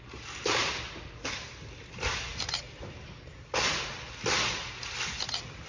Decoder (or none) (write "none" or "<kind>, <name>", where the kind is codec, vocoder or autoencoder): none